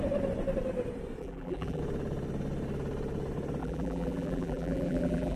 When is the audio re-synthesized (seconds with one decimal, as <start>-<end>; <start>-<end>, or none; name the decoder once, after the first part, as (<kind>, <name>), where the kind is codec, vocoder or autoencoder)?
1.2-1.8 (vocoder, BigVGAN v2); 3.6-5.4